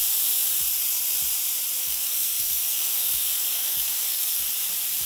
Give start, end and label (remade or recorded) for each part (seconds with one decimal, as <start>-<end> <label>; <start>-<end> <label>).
0.0-1.8 recorded; 1.8-4.4 remade; 4.4-5.1 recorded